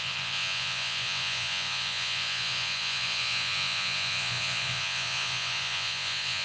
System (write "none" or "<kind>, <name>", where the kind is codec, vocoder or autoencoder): vocoder, Vocos